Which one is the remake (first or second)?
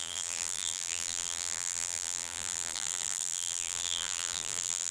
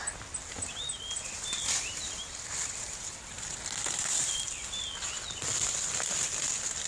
first